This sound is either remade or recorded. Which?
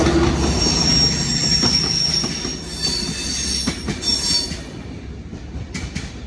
recorded